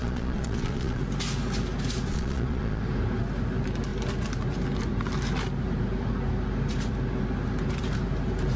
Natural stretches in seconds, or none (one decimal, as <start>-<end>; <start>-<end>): 1.0-2.1; 2.8-8.6

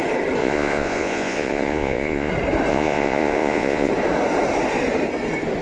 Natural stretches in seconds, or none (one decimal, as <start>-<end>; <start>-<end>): 0.0-0.4; 2.3-2.7; 3.9-5.6